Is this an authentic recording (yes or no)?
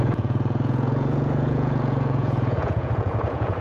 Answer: no